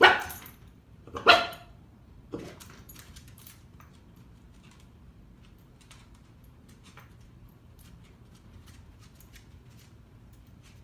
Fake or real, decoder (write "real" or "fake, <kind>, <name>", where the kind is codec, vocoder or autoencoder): fake, vocoder, BigVGAN v2